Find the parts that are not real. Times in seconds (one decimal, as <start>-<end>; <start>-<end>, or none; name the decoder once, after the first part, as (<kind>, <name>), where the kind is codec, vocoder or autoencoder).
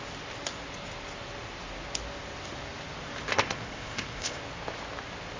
3.3-4.4 (codec, ZipCodec)